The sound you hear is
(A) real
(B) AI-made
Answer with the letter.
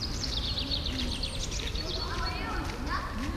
A